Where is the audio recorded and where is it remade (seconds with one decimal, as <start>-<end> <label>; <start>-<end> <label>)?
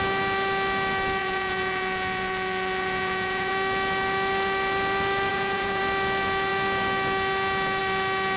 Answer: 0.0-1.2 recorded; 1.2-3.5 remade; 3.5-5.3 recorded; 5.3-5.8 remade; 5.8-8.4 recorded